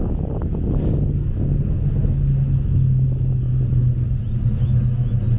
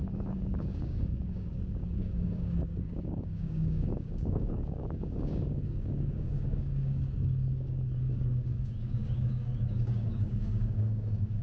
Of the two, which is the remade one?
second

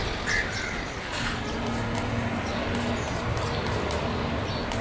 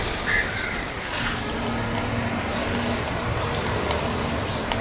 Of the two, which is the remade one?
second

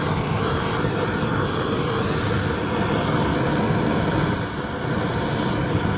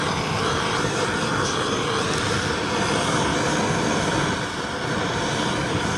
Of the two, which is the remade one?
second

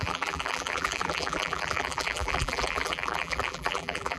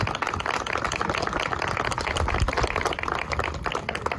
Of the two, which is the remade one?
first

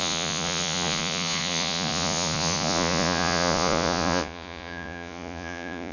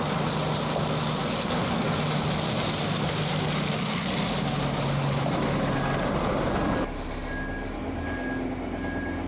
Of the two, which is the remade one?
first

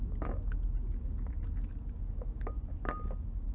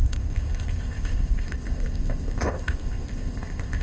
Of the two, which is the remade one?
second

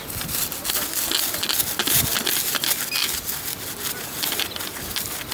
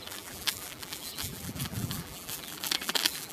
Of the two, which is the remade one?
second